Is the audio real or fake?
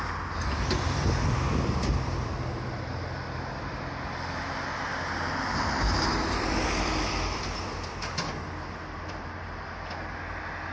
fake